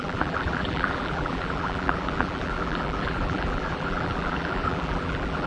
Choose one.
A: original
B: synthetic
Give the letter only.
B